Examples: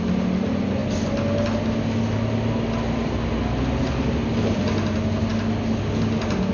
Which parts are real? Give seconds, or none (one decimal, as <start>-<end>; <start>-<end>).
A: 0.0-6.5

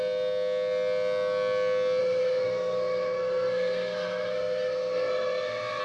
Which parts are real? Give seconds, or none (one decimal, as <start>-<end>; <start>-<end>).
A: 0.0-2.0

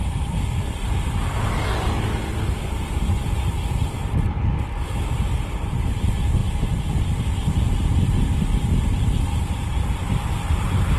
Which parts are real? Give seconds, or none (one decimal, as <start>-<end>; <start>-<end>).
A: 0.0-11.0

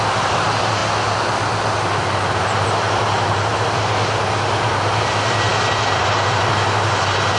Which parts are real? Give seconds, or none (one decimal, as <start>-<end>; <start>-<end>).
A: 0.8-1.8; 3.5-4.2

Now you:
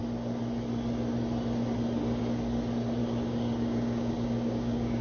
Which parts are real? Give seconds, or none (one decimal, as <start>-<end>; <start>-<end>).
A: 0.0-3.0